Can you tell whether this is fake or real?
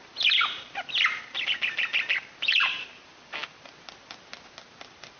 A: real